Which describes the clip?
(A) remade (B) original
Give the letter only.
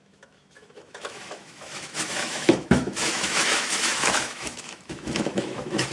A